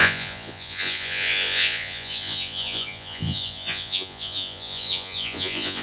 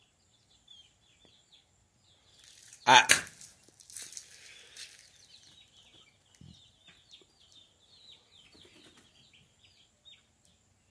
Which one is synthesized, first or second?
first